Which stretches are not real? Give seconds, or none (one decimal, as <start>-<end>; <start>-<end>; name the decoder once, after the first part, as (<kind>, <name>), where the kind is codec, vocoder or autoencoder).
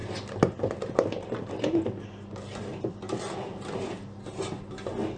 none